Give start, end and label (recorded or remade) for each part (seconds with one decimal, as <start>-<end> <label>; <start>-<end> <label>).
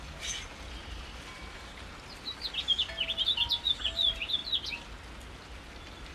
0.0-1.4 remade; 1.4-3.7 recorded; 3.7-4.4 remade; 4.4-6.1 recorded